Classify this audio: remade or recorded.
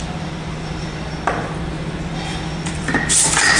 recorded